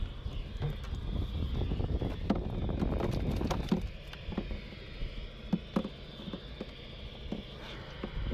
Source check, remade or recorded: recorded